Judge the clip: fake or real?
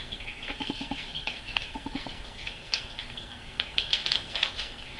fake